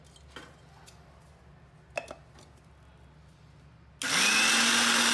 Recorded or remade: recorded